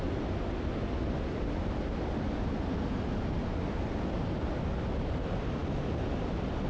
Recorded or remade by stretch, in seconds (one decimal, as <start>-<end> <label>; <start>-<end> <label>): 0.0-6.7 recorded